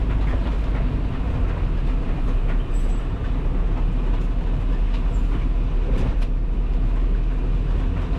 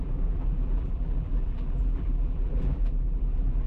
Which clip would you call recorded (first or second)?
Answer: first